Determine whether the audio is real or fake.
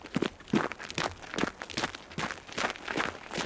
real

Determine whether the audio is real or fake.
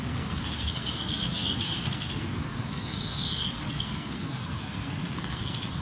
fake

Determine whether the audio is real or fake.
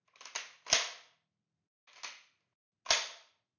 real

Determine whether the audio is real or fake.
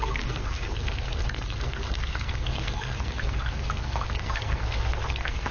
fake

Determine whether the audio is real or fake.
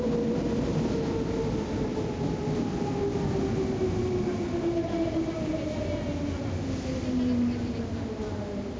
real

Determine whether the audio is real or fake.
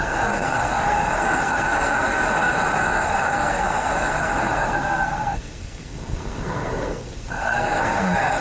fake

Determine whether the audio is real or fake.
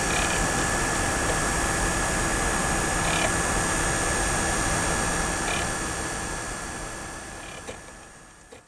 real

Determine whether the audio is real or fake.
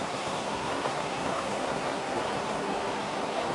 fake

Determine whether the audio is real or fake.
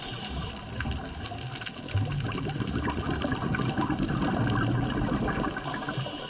real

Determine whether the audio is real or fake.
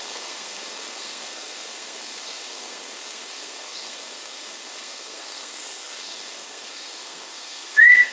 fake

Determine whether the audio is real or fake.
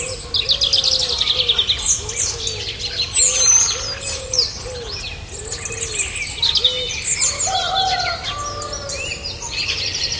real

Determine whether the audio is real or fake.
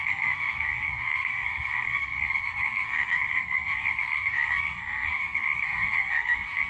fake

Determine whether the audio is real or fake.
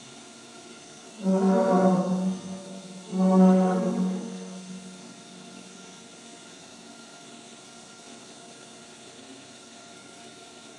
fake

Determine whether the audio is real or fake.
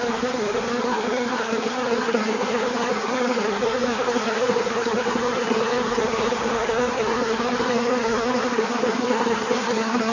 fake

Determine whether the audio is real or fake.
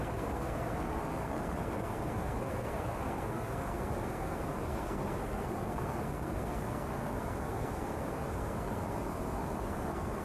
fake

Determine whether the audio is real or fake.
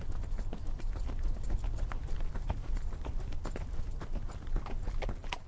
real